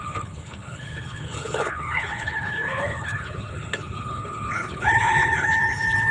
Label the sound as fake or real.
fake